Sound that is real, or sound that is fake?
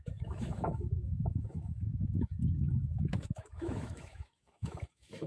fake